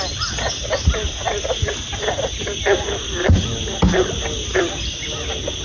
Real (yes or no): yes